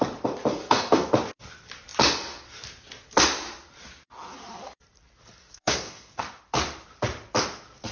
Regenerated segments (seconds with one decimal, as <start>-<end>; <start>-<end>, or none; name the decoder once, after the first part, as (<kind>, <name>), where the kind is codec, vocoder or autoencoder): 0.5-1.1 (codec, SNAC); 5.4-6.4